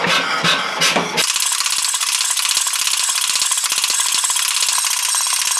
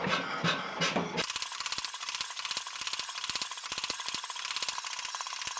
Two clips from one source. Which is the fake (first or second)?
second